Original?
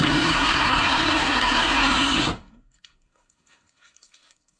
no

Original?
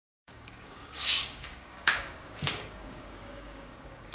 no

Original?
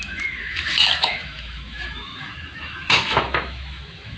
no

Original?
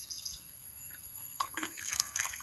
no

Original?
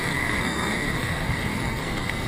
no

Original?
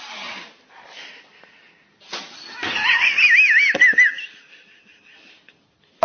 yes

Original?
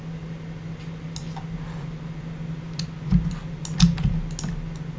yes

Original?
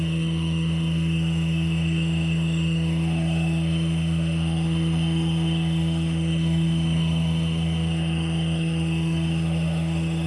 no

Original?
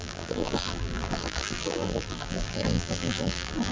no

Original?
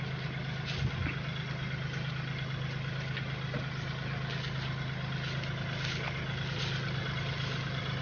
yes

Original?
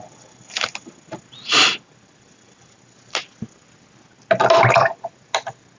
yes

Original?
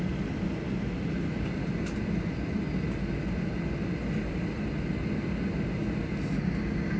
yes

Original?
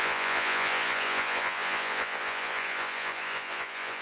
no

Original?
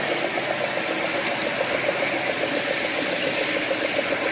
yes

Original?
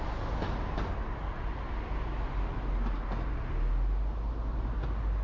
yes